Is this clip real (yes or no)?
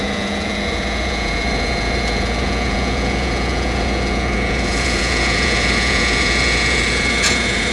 no